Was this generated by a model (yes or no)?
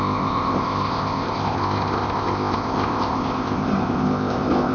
yes